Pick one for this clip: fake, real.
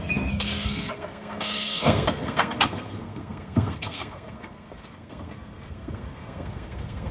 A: fake